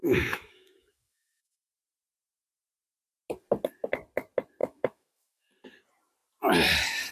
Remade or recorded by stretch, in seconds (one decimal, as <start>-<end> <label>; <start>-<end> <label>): 0.0-1.7 remade; 1.7-4.6 recorded; 4.6-5.5 remade; 5.5-7.1 recorded